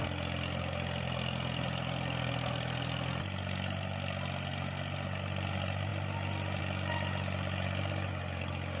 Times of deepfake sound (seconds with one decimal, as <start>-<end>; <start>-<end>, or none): none